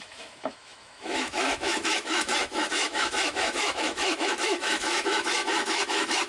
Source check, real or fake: fake